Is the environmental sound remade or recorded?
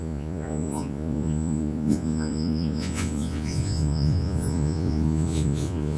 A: remade